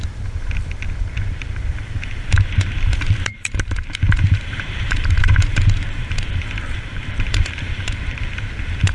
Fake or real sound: fake